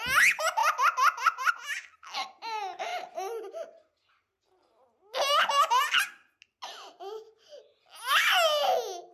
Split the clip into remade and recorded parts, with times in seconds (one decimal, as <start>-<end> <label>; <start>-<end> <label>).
0.0-9.1 recorded